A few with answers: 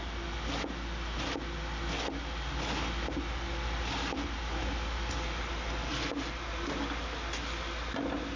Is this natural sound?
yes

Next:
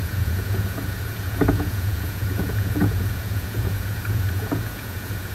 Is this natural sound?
no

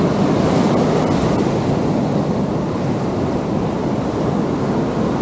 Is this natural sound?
yes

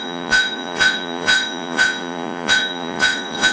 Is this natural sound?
no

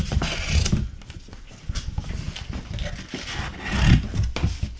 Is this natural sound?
yes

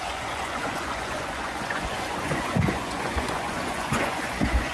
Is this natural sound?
no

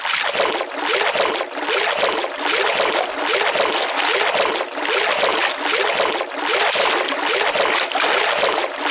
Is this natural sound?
yes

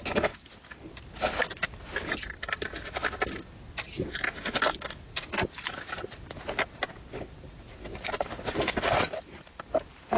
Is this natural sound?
yes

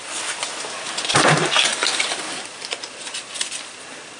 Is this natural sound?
yes